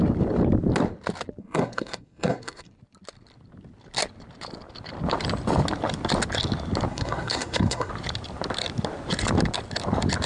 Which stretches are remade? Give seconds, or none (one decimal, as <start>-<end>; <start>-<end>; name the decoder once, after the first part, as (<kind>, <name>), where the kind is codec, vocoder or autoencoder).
1.4-2.7 (codec, SNAC); 6.9-7.9